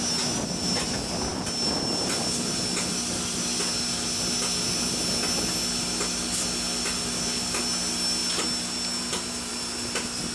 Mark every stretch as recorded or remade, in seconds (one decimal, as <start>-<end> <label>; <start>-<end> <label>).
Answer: 0.0-10.3 recorded